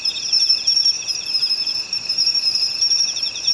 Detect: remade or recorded remade